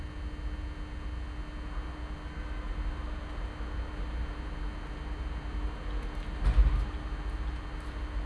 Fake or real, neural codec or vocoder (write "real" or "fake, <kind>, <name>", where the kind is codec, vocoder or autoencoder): real